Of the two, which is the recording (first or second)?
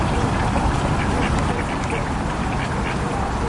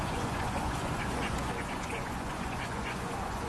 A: first